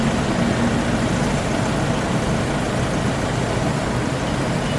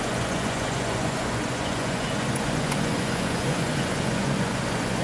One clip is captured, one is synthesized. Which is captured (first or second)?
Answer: first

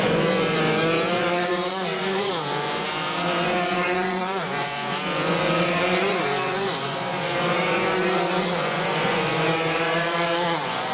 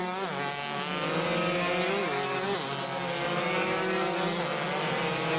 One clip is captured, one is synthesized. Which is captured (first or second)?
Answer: second